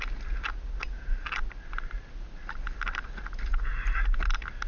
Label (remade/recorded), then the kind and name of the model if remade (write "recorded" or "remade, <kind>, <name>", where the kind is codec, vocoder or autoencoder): recorded